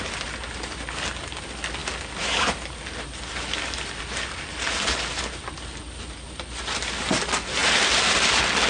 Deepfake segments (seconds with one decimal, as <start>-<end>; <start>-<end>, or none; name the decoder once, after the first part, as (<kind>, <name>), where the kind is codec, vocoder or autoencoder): none